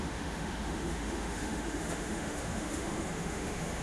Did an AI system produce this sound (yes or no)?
yes